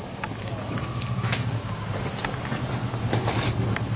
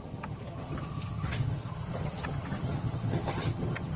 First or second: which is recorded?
first